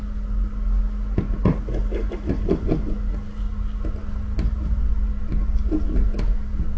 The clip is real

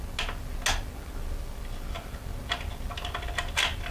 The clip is real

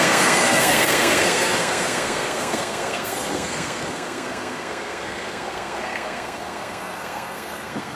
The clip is fake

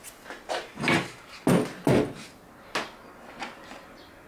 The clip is real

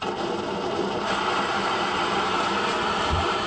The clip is fake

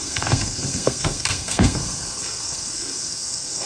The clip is fake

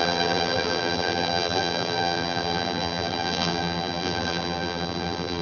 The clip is fake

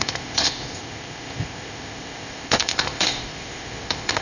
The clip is fake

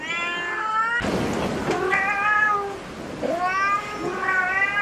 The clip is real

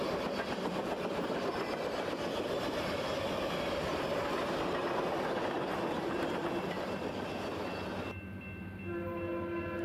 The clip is real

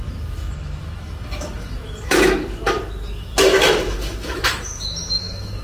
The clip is fake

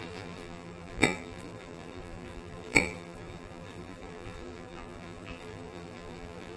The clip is fake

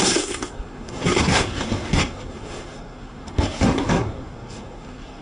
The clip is fake